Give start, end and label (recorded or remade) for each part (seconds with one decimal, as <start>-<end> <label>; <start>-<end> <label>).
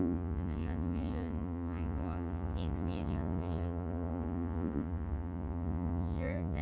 0.0-6.6 remade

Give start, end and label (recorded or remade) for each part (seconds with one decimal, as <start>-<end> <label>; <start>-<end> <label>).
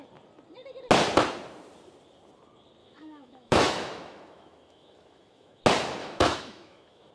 0.0-2.8 recorded; 2.8-5.6 remade; 5.6-6.0 recorded; 6.0-7.1 remade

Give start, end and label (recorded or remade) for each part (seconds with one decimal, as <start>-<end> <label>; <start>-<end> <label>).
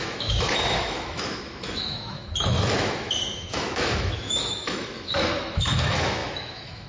0.0-6.9 remade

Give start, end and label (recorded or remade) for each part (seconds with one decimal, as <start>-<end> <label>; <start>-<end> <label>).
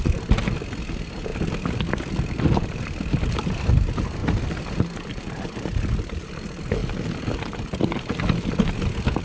0.0-9.2 recorded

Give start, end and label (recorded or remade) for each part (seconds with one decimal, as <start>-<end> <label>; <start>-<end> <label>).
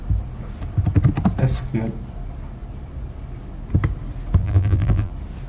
0.0-4.4 recorded; 4.4-5.1 remade; 5.1-5.5 recorded